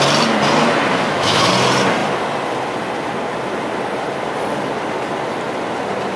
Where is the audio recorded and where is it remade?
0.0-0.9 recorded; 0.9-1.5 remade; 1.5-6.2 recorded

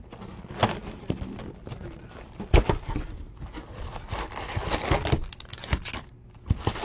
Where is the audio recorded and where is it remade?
0.0-6.8 recorded

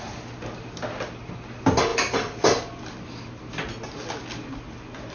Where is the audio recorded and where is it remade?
0.0-5.1 recorded

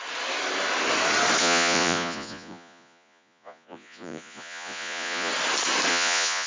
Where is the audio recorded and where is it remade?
0.0-1.4 recorded; 1.4-5.3 remade; 5.3-5.9 recorded; 5.9-6.5 remade

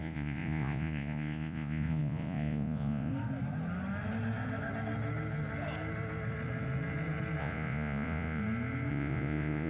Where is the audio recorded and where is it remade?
0.0-3.1 remade; 3.1-7.4 recorded; 7.4-8.4 remade; 8.4-8.9 recorded; 8.9-9.7 remade

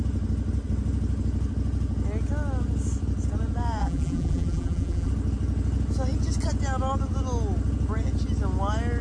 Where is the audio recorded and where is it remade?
0.0-3.8 recorded; 3.8-5.1 remade; 5.1-9.0 recorded